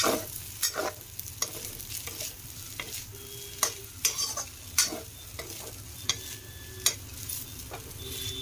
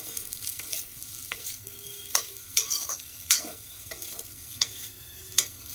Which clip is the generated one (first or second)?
second